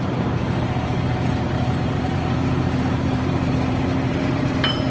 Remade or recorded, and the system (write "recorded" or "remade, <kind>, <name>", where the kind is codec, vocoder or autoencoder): remade, vocoder, BigVGAN v2